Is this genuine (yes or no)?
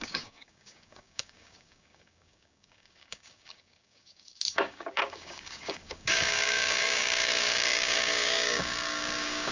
no